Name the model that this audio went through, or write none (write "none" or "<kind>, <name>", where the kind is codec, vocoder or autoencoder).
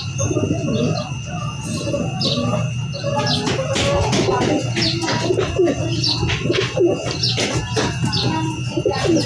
none